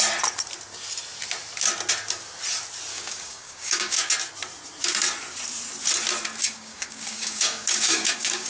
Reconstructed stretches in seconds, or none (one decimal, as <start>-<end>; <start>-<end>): 2.9-4.1; 6.4-8.5